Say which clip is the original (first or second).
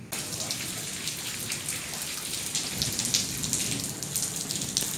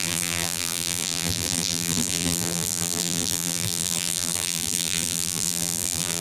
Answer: first